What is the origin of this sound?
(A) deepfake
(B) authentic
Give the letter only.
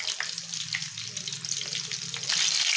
B